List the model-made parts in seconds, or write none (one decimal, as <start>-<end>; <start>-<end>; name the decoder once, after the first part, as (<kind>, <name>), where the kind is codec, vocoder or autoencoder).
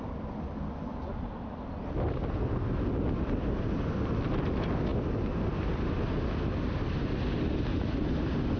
none